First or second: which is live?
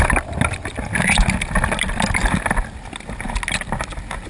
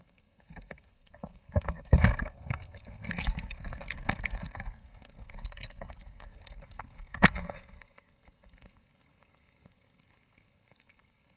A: first